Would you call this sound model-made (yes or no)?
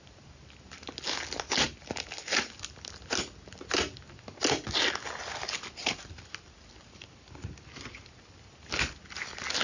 no